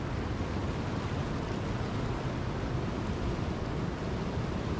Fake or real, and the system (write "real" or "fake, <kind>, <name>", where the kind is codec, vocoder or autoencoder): real